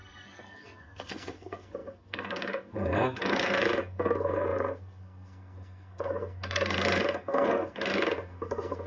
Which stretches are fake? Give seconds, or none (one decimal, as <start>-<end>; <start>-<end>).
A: 0.0-8.9